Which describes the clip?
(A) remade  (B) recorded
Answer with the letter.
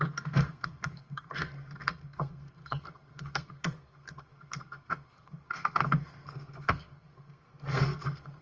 A